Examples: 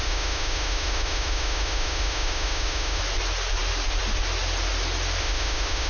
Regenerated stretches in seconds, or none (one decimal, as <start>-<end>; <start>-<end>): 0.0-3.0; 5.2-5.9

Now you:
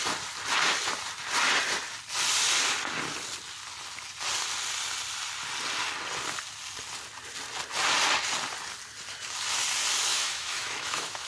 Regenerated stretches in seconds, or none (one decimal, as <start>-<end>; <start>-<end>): 10.1-11.3

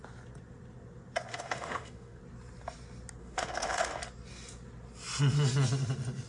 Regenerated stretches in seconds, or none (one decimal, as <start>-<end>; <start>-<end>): 1.3-2.2; 3.2-4.0

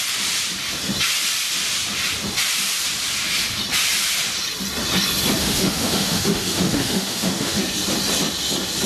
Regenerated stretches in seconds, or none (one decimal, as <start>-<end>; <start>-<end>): 5.4-7.6

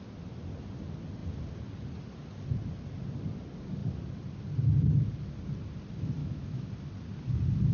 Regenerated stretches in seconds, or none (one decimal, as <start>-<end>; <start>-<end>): 6.2-6.7